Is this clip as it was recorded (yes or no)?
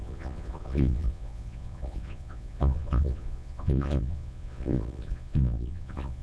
no